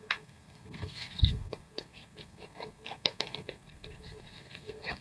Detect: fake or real fake